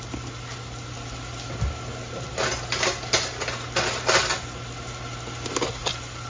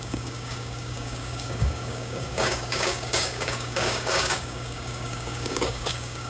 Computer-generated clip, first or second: second